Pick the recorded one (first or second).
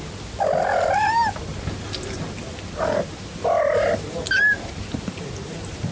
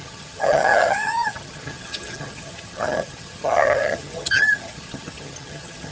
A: first